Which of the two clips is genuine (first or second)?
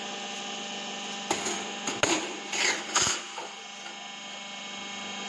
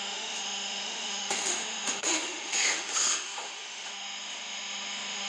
first